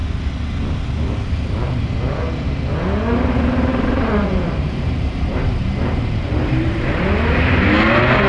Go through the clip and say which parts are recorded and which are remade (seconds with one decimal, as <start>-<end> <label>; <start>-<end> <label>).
0.0-3.7 recorded; 3.7-7.6 remade; 7.6-8.3 recorded